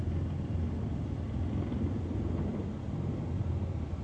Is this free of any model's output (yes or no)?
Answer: yes